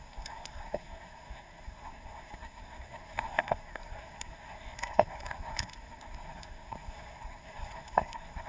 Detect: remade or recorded remade